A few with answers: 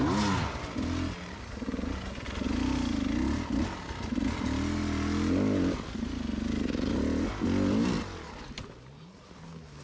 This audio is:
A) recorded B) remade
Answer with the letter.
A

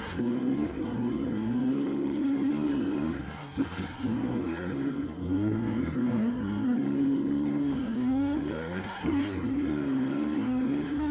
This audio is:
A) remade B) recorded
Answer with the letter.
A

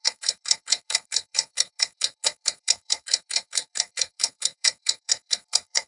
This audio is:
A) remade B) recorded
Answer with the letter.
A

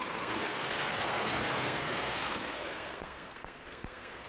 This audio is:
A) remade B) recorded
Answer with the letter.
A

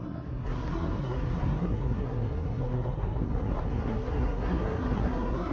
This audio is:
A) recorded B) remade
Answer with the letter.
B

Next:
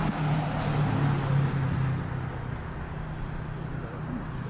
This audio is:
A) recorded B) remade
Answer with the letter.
A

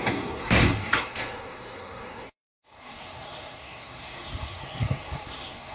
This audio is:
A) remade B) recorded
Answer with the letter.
A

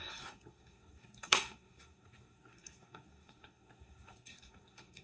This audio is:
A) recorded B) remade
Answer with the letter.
B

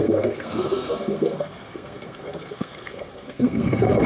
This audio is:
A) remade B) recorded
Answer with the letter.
A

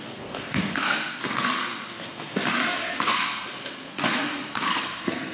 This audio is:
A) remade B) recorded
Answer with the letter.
A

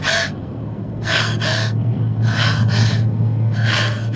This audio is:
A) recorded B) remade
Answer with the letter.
B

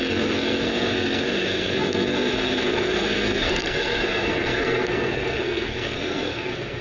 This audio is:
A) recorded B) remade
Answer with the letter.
B